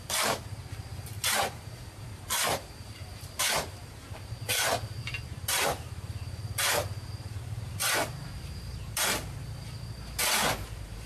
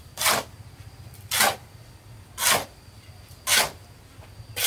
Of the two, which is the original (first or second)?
second